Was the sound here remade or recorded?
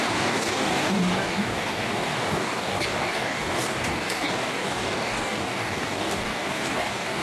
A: remade